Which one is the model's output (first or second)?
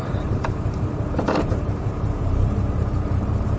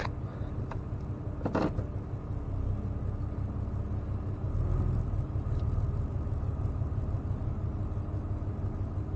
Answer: first